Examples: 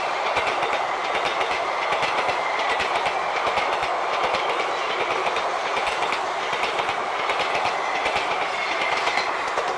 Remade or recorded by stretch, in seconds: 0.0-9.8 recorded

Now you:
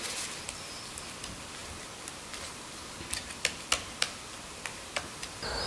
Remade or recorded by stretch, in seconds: 0.0-5.7 recorded

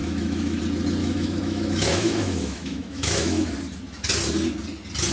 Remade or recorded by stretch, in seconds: 0.0-0.6 remade; 0.6-1.0 recorded; 1.0-3.5 remade; 3.5-5.1 recorded

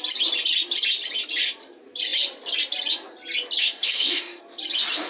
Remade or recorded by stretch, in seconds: 0.0-3.6 recorded; 3.6-4.4 remade; 4.4-5.1 recorded

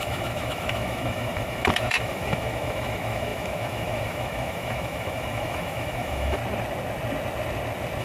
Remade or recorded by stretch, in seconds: 0.0-6.4 remade; 6.4-8.0 recorded

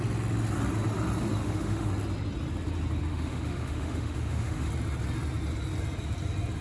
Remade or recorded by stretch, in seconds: 0.0-1.4 recorded; 1.4-1.9 remade; 1.9-3.1 recorded; 3.1-4.7 remade; 4.7-6.6 recorded